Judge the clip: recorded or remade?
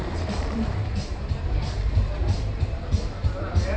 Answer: remade